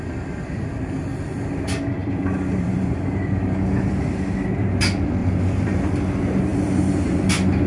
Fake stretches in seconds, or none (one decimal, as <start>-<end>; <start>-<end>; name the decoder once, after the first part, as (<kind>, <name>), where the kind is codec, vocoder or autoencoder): 2.0-2.9 (vocoder, BigVGAN v2); 5.2-5.9